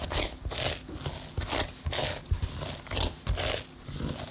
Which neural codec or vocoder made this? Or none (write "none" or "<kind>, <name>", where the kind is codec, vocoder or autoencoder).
none